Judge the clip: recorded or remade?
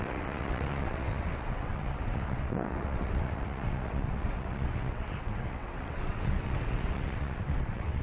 remade